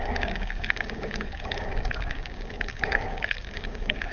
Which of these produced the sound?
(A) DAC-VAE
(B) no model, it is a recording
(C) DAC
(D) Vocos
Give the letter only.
C